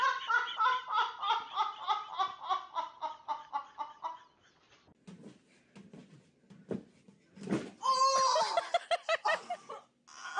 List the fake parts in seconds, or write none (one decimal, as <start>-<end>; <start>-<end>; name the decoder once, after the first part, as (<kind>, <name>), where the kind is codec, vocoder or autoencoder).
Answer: none